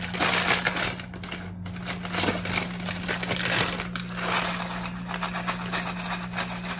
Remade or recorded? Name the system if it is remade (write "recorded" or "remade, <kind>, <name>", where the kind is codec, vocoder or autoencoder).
recorded